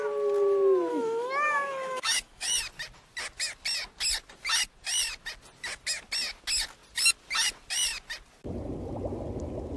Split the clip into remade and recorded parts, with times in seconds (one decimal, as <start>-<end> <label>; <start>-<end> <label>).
0.0-0.9 recorded; 0.9-2.6 remade; 2.6-9.8 recorded